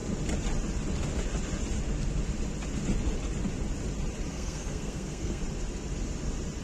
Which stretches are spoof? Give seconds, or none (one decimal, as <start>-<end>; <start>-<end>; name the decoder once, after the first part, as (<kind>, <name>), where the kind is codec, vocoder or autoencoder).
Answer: 4.3-5.4 (codec, SNAC)